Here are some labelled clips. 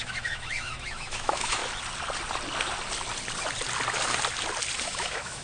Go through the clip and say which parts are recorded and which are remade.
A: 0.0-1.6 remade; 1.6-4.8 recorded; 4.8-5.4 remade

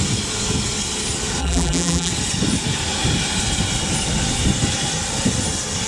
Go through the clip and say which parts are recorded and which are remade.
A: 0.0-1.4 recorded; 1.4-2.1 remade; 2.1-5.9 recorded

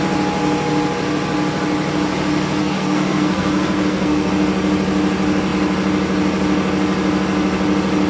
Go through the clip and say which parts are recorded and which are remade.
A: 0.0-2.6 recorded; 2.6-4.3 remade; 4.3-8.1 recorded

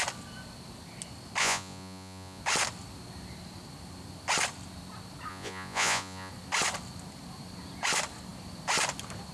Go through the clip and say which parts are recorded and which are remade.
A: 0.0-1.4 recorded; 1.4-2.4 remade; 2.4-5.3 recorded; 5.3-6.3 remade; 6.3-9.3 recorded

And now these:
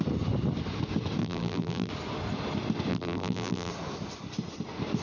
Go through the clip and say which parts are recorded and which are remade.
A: 0.0-1.2 recorded; 1.2-1.9 remade; 1.9-2.9 recorded; 2.9-3.7 remade; 3.7-5.0 recorded

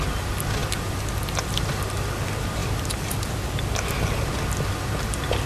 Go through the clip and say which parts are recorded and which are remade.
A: 0.0-5.5 recorded

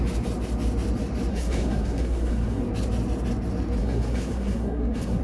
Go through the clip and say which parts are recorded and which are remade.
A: 0.0-1.3 recorded; 1.3-2.6 remade; 2.6-3.8 recorded; 3.8-5.2 remade

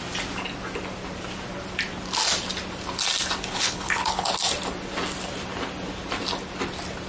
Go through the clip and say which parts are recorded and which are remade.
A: 0.0-3.5 recorded; 3.5-4.3 remade; 4.3-7.1 recorded